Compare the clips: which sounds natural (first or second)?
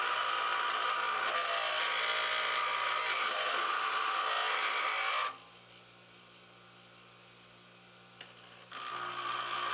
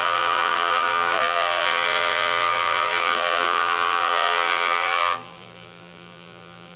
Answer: first